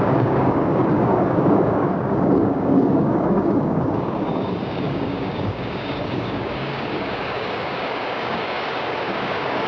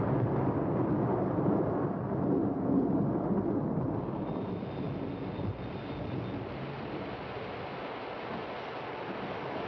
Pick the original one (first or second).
second